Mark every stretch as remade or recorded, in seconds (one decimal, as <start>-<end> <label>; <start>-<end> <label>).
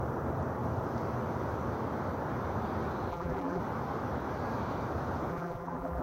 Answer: 0.0-3.1 recorded; 3.1-3.6 remade; 3.6-5.3 recorded; 5.3-6.0 remade